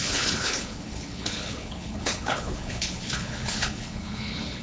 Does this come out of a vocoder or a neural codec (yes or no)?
yes